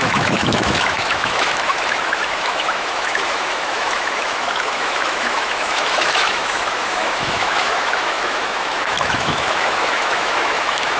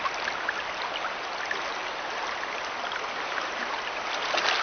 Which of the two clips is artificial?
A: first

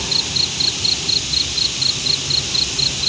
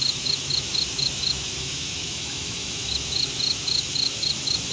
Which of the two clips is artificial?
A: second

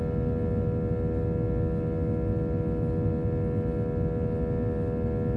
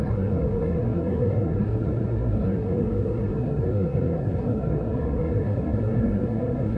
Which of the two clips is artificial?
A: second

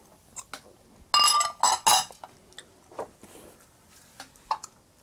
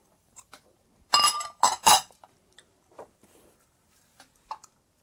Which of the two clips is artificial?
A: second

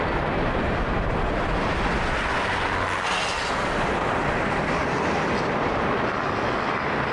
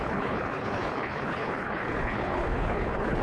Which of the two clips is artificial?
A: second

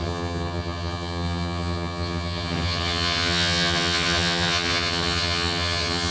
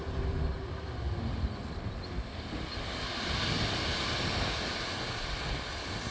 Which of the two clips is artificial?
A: first